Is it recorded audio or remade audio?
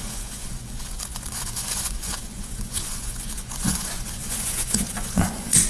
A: remade